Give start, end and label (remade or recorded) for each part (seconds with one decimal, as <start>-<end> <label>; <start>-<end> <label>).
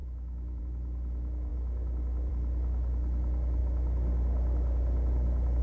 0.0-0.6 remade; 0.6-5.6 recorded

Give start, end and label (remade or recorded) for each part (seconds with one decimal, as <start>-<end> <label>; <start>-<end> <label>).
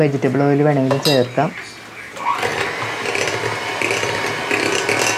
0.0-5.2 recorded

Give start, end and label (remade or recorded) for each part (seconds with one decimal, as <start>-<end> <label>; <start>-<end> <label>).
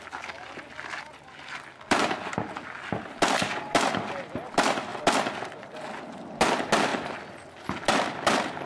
0.0-8.7 recorded